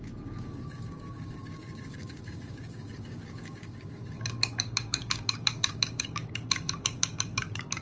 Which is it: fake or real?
fake